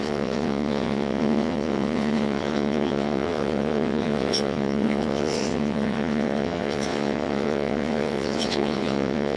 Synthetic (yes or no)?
yes